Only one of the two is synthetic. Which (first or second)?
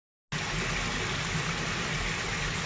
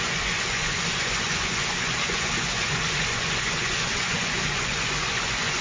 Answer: second